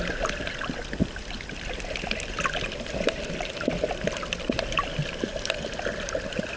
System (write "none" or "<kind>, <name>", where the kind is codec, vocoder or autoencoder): none